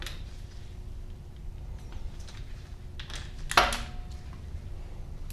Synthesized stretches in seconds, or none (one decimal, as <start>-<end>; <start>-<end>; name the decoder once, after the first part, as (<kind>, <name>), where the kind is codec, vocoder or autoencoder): 1.4-2.8 (vocoder, BigVGAN v2)